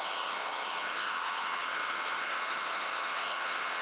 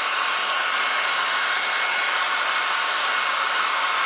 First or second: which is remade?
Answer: first